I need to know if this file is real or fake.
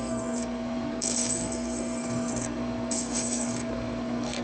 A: fake